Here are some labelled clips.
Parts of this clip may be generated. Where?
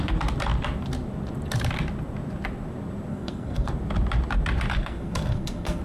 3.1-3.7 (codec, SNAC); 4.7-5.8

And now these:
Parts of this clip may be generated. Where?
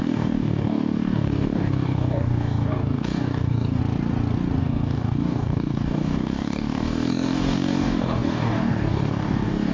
0.0-3.8 (codec, DAC); 4.6-9.7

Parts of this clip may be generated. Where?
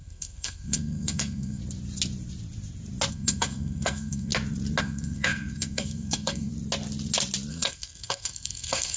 0.0-1.6 (codec, SNAC); 3.1-4.3; 4.8-6.5; 7.5-9.0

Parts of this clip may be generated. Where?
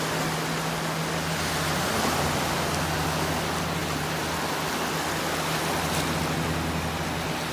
none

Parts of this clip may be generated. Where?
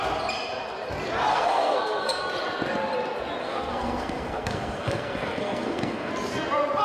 1.3-2.2 (codec, SNAC); 3.4-6.1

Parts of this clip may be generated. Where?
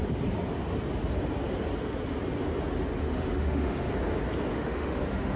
3.0-3.9 (autoencoder, DAC-VAE); 4.5-5.4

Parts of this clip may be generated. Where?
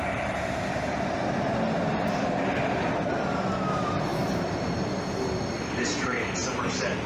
none